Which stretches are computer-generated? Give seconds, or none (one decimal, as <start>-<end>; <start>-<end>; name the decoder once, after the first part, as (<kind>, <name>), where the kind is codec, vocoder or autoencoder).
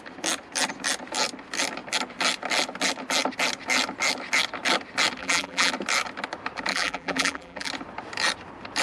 5.2-5.7 (vocoder, BigVGAN v2); 6.7-7.7